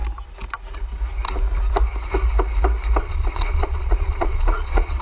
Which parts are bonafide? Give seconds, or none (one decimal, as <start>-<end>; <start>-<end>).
0.0-3.0